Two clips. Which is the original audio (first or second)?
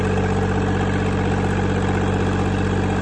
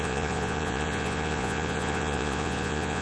first